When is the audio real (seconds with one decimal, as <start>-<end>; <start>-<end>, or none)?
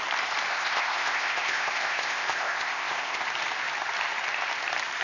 0.0-0.5; 3.2-5.0